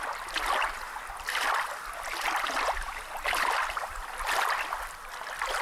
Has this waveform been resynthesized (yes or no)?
no